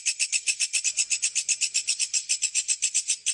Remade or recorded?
recorded